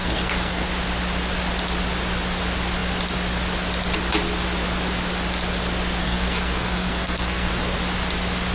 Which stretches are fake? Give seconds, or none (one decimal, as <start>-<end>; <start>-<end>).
0.0-0.7; 6.0-7.5

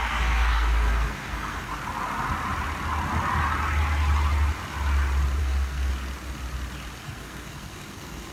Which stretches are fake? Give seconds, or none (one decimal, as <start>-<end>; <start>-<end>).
0.0-1.7; 5.4-5.9; 7.0-8.3

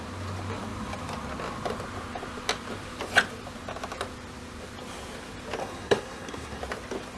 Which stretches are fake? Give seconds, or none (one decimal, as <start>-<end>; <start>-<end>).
5.6-6.6

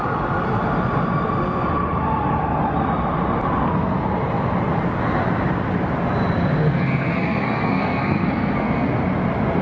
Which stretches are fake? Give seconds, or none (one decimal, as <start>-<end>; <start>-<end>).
6.6-8.9